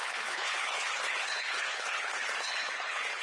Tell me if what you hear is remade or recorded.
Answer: remade